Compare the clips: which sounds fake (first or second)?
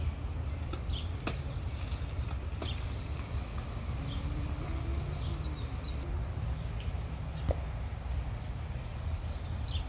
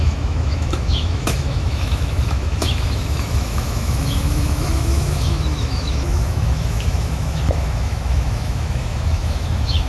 second